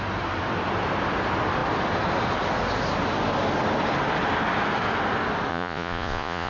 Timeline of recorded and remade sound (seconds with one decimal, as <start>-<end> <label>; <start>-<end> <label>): 0.0-5.5 recorded; 5.5-6.5 remade